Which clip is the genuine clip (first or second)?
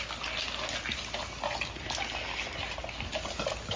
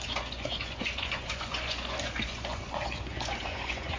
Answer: first